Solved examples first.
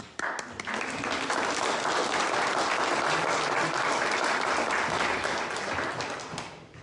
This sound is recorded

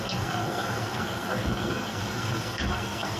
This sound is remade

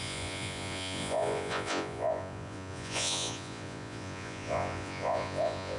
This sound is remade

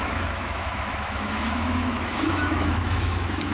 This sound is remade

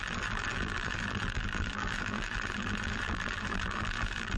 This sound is remade